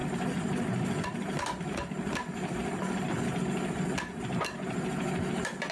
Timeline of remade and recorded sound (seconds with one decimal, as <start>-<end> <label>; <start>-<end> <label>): 0.0-3.4 remade; 3.4-5.7 recorded

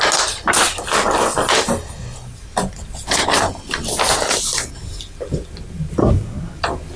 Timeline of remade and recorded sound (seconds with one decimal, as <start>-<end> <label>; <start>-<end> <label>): 0.0-6.0 recorded; 6.0-6.6 remade; 6.6-7.0 recorded

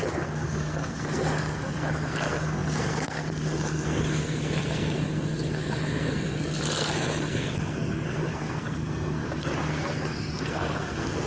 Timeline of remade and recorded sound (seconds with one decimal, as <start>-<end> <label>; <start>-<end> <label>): 0.0-11.3 remade